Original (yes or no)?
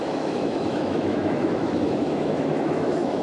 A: no